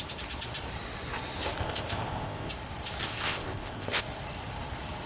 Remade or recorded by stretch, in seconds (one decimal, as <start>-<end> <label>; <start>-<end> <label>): 0.0-1.6 recorded; 1.6-2.5 remade; 2.5-3.1 recorded; 3.1-4.0 remade; 4.0-5.1 recorded